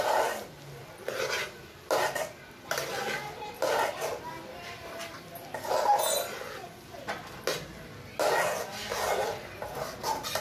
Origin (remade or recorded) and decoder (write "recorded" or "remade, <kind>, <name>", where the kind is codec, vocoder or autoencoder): recorded